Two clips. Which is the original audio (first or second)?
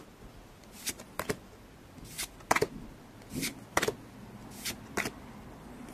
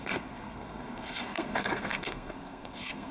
first